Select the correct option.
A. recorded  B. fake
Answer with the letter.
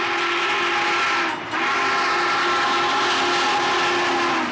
A